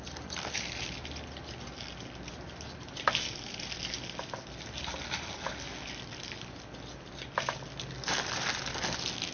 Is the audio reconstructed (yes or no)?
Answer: no